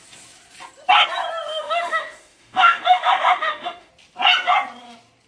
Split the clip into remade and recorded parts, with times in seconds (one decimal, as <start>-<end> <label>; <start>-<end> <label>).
0.0-1.5 recorded; 1.5-3.9 remade; 3.9-5.3 recorded